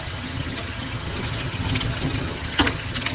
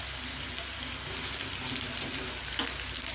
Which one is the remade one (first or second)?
first